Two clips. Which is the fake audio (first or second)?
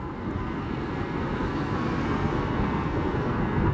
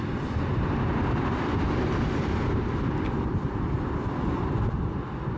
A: first